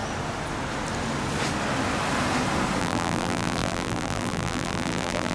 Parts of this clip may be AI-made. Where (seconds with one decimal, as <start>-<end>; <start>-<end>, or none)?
2.8-5.3